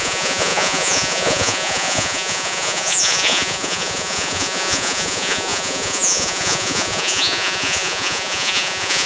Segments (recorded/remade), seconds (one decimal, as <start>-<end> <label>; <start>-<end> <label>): 0.0-9.1 remade